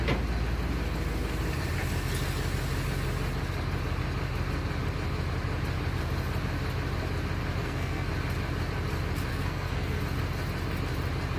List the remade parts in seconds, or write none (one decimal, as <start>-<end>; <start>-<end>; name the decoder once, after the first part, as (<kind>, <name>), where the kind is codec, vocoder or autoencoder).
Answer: 7.6-8.1 (codec, SNAC); 9.3-10.0